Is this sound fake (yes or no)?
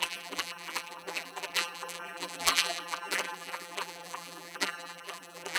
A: yes